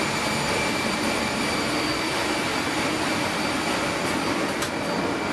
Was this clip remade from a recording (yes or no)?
no